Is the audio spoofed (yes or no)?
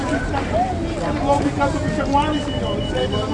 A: no